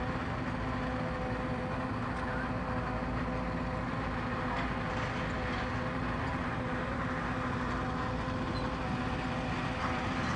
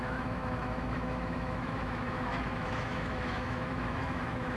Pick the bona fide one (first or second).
first